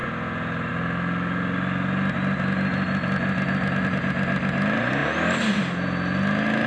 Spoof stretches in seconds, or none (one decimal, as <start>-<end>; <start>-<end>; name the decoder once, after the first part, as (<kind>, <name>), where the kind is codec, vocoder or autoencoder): none

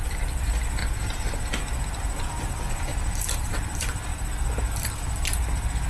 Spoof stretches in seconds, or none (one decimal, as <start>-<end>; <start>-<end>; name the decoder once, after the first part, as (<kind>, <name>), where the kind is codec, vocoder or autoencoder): 0.0-0.8 (vocoder, BigVGAN v2); 2.0-2.9; 3.5-4.1; 5.0-5.9